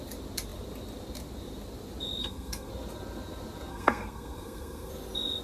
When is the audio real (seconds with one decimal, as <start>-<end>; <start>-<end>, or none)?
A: 0.0-2.2; 2.7-3.7; 4.9-5.4